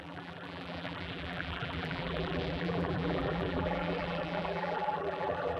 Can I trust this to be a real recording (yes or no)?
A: no